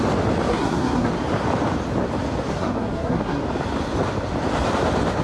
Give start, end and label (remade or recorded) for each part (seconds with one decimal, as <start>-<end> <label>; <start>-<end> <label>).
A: 0.0-0.5 recorded; 0.5-1.1 remade; 1.1-2.5 recorded; 2.5-3.4 remade; 3.4-5.2 recorded